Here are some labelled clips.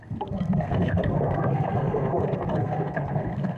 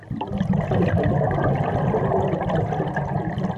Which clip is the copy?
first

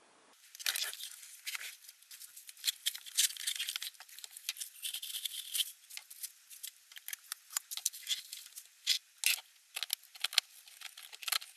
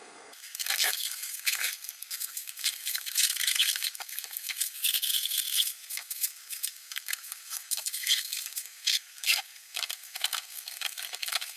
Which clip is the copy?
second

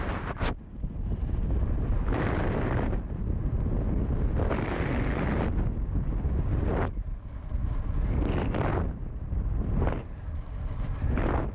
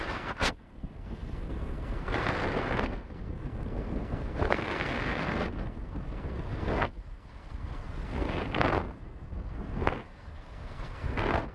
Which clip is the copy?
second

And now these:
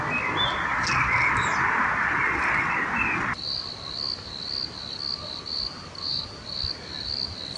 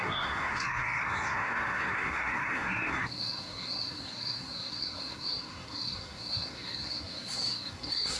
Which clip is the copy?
second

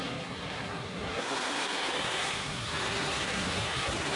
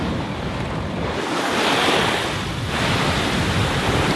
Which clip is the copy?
first